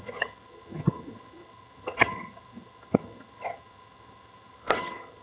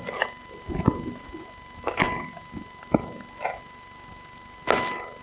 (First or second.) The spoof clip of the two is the first